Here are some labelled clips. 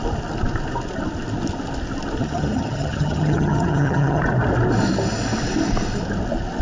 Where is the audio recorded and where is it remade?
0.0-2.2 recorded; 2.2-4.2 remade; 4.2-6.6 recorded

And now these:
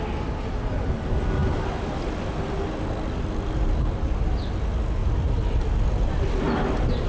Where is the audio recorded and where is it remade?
0.0-7.1 recorded

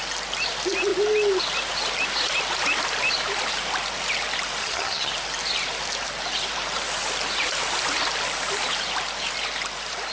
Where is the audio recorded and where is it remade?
0.0-4.6 recorded; 4.6-5.1 remade; 5.1-10.1 recorded

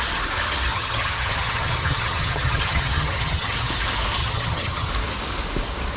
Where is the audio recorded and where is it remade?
0.0-0.7 recorded; 0.7-3.7 remade; 3.7-4.2 recorded; 4.2-4.9 remade; 4.9-6.0 recorded

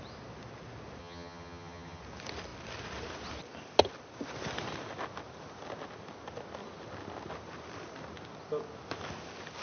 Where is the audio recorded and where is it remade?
0.0-1.0 recorded; 1.0-2.0 remade; 2.0-9.6 recorded

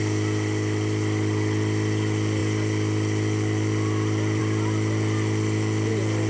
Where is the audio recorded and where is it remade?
0.0-6.3 recorded

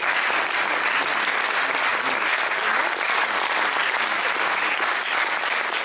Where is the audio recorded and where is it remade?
0.0-5.8 recorded